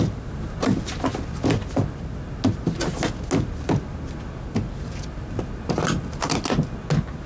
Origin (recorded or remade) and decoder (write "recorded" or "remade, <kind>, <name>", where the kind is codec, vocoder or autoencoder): recorded